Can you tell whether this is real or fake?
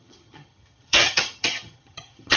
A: fake